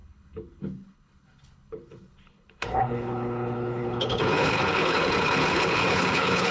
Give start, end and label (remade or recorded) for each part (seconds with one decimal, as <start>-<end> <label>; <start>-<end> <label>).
0.0-6.5 remade